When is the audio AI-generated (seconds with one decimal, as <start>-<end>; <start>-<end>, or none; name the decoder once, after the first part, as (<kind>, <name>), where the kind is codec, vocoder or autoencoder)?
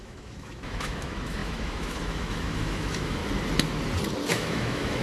0.0-3.2 (autoencoder, DAC-VAE); 4.3-5.0